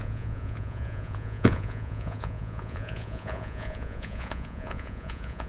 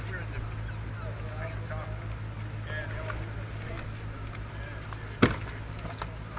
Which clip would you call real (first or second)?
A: second